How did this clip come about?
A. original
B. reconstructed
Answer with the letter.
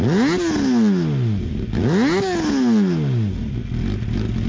A